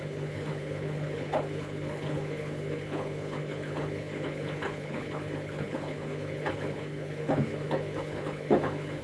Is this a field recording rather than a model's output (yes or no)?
no